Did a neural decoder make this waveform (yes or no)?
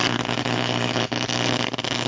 no